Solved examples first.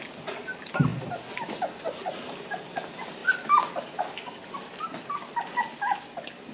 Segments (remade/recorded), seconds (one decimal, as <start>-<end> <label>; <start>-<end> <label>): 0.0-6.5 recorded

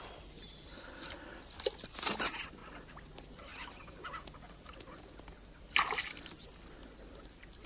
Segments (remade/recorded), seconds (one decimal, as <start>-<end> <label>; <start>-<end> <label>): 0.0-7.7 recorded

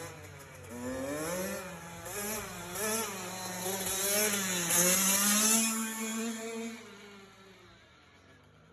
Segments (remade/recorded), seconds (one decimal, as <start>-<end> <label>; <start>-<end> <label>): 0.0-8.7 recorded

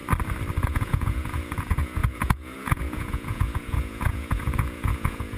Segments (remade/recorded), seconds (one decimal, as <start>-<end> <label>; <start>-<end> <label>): 0.0-0.6 recorded; 0.6-5.4 remade

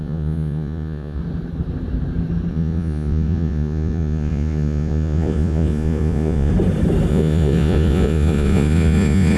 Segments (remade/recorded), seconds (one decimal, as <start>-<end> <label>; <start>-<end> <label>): 0.0-1.2 remade; 1.2-2.5 recorded; 2.5-6.5 remade; 6.5-7.1 recorded; 7.1-9.4 remade

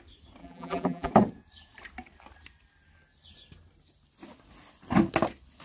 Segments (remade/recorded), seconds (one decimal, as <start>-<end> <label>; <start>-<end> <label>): 0.0-0.4 recorded; 0.4-1.1 remade; 1.1-5.6 recorded